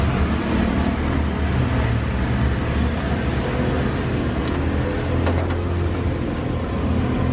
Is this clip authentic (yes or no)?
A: yes